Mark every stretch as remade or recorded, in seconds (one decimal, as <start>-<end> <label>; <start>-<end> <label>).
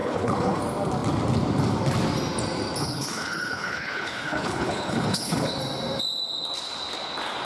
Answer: 0.0-0.6 remade; 0.6-2.8 recorded; 2.8-5.6 remade; 5.6-7.4 recorded